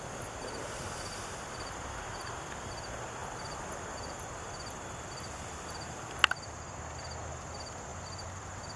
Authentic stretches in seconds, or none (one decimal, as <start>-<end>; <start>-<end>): 0.0-7.9